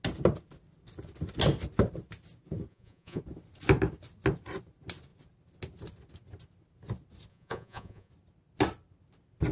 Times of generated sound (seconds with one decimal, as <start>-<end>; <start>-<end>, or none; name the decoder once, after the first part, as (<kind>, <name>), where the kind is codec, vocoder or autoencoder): 2.7-3.2 (vocoder, Vocos); 7.3-8.1